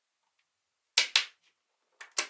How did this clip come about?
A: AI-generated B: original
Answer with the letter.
B